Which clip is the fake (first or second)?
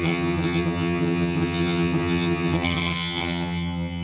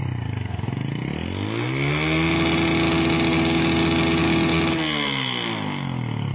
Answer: first